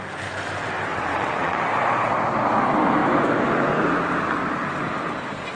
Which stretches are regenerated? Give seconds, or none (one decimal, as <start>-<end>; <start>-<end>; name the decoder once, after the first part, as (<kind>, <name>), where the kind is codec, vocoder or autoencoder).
0.9-1.6 (vocoder, WaveNeXt)